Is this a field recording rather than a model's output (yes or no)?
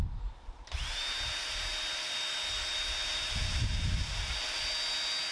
yes